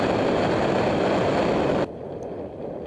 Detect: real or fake real